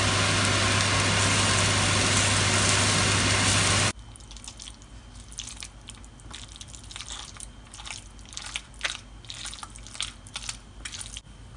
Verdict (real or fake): real